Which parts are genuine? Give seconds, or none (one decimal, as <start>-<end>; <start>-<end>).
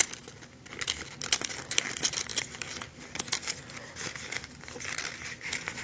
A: 0.0-5.8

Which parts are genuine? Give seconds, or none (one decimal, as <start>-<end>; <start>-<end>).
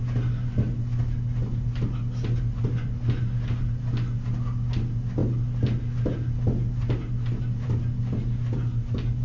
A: 0.0-9.2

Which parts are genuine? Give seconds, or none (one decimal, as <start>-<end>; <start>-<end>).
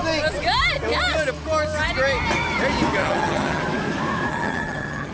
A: 0.0-3.0; 3.6-4.3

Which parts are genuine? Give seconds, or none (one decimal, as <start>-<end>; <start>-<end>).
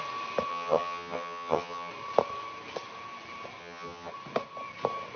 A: 0.0-0.5; 1.9-3.6; 4.1-5.2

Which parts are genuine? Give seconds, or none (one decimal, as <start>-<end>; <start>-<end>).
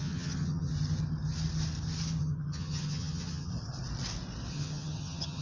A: 0.7-2.2; 3.5-4.5